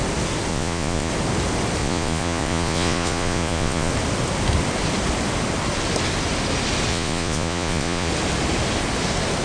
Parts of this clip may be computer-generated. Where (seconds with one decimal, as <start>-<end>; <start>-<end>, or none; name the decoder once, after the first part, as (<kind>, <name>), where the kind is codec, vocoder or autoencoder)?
0.5-1.1 (vocoder, Vocos); 1.8-3.9; 6.9-8.1